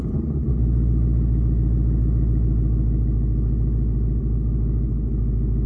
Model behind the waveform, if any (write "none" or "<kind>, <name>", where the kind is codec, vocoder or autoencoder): none